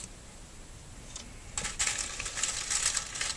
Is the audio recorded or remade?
recorded